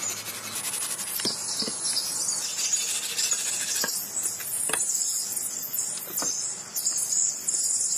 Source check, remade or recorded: recorded